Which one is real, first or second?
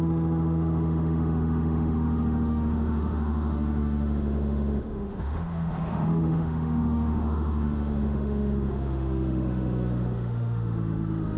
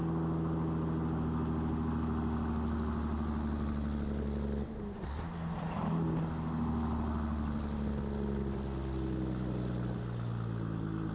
second